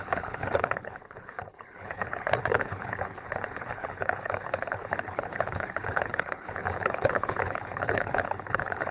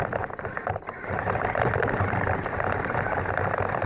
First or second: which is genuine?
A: second